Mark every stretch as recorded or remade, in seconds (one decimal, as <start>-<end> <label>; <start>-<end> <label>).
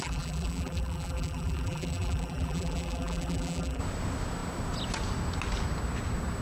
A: 0.0-3.8 remade; 3.8-6.4 recorded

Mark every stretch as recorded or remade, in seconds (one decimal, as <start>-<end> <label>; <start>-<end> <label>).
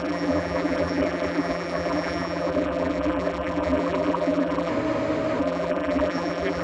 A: 0.0-4.7 remade; 4.7-5.4 recorded; 5.4-6.6 remade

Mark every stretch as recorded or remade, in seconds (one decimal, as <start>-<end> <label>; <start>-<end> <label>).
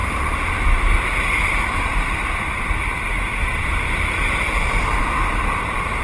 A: 0.0-0.8 remade; 0.8-3.4 recorded; 3.4-5.0 remade; 5.0-6.0 recorded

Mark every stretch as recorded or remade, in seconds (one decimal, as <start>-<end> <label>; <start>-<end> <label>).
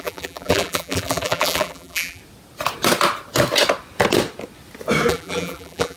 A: 0.0-2.2 remade; 2.2-5.1 recorded; 5.1-6.0 remade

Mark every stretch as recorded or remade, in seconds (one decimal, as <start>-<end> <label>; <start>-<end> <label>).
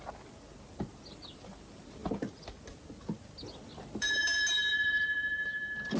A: 0.0-6.0 recorded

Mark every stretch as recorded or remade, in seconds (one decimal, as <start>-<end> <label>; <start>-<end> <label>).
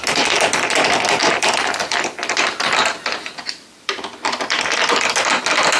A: 0.0-1.2 recorded; 1.2-4.2 remade; 4.2-5.8 recorded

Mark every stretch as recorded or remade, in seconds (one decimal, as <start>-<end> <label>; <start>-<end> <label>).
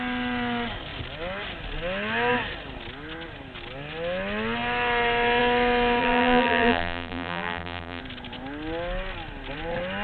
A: 0.0-6.0 recorded; 6.0-8.0 remade; 8.0-10.0 recorded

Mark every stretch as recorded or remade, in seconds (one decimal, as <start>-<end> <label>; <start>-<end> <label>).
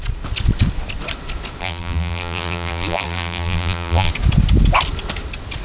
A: 0.0-1.6 recorded; 1.6-4.1 remade; 4.1-5.6 recorded